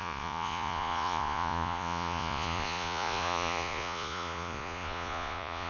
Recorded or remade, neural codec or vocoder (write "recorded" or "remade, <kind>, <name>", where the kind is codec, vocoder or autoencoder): remade, vocoder, Vocos